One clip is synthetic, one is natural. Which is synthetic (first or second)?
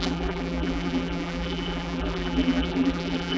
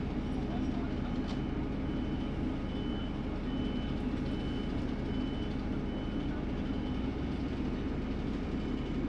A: first